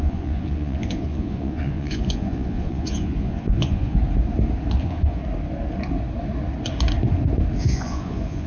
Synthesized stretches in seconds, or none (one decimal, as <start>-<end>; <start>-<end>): 0.0-4.0; 4.8-5.2; 7.6-8.5